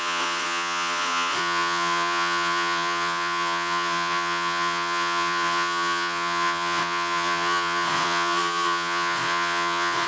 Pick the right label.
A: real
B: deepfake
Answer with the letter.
B